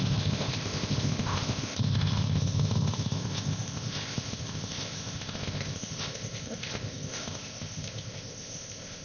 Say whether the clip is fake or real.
fake